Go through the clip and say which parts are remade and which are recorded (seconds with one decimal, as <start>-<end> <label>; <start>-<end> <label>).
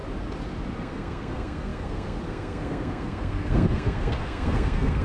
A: 0.0-0.8 recorded; 0.8-5.0 remade